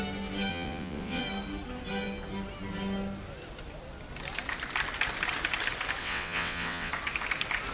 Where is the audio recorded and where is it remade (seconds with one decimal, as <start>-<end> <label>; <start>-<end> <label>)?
0.0-0.5 recorded; 0.5-1.2 remade; 1.2-6.0 recorded; 6.0-6.9 remade; 6.9-7.7 recorded